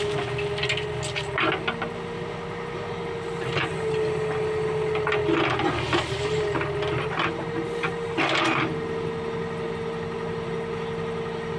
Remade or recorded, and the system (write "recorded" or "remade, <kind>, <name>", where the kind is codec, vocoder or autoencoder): recorded